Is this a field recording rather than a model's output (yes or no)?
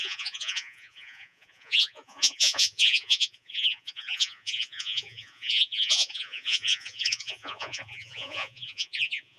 no